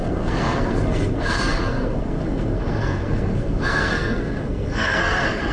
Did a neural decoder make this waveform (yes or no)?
yes